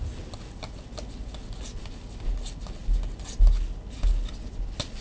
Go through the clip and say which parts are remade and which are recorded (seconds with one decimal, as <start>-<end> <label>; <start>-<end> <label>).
0.0-5.0 recorded